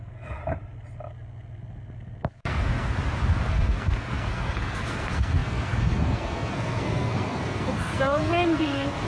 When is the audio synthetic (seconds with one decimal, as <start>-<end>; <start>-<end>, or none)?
0.0-0.4; 2.3-3.0; 3.5-9.1